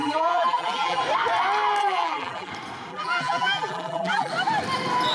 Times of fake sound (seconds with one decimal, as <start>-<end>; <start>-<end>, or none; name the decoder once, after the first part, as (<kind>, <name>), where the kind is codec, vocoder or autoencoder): 0.0-1.0 (vocoder, BigVGAN v2); 1.8-2.5; 2.9-4.3